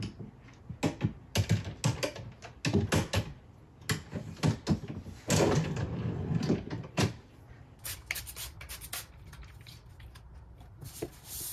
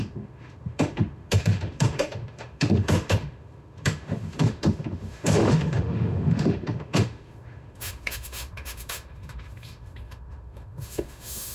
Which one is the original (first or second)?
first